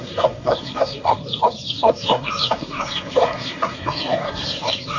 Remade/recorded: remade